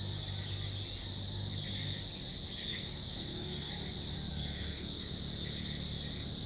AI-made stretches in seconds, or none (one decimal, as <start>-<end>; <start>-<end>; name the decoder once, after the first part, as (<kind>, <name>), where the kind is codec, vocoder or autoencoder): 2.7-3.7 (codec, SNAC); 4.3-5.1